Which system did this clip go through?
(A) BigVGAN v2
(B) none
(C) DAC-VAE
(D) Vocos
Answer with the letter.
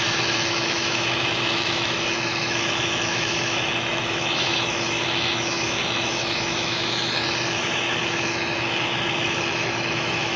C